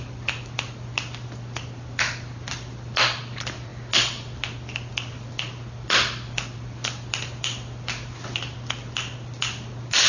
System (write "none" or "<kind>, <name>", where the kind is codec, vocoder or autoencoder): none